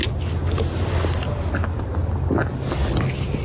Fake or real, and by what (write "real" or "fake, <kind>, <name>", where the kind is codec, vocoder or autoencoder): real